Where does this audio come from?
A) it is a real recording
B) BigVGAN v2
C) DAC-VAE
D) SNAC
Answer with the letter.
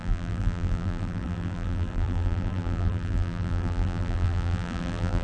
B